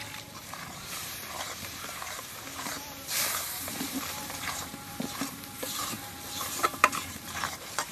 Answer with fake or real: fake